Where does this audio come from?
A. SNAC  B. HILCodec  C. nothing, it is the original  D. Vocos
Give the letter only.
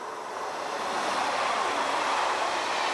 C